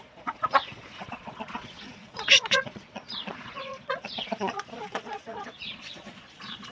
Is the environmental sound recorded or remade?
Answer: remade